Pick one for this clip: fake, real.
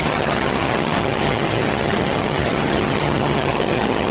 fake